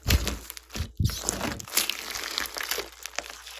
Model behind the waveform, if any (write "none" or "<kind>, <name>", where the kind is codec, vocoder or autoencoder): none